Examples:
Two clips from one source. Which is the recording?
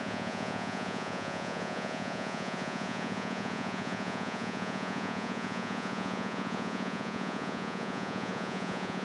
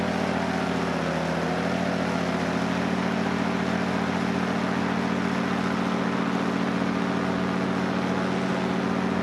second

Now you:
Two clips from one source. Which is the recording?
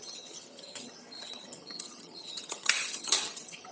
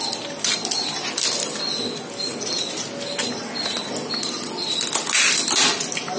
second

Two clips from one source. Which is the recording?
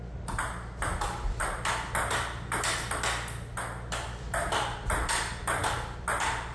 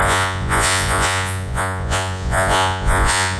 first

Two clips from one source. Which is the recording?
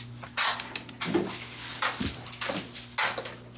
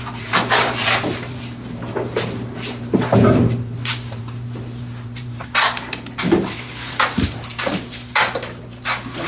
first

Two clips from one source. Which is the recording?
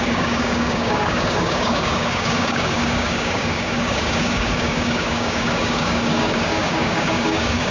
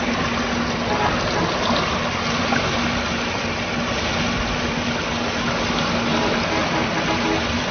second